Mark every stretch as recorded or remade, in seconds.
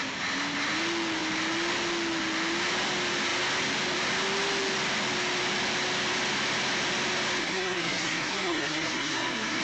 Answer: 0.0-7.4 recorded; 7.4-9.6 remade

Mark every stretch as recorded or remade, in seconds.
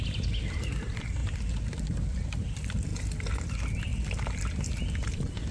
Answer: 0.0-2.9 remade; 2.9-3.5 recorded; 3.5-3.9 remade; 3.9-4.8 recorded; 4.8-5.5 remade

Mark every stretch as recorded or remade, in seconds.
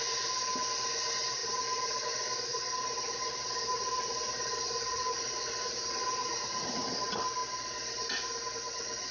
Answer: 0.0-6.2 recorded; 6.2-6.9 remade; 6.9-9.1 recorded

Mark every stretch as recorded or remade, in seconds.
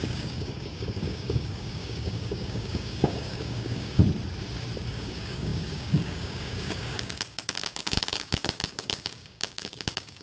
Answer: 0.0-4.0 remade; 4.0-4.9 recorded; 4.9-10.2 remade